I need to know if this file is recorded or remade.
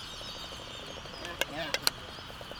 recorded